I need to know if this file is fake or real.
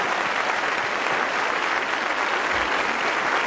real